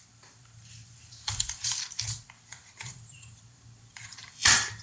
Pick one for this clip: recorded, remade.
remade